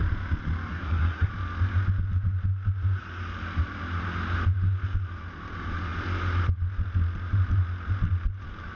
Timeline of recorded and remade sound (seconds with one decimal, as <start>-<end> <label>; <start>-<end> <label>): 0.0-0.7 recorded; 0.7-1.3 remade; 1.3-8.8 recorded